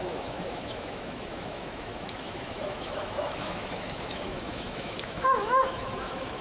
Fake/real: fake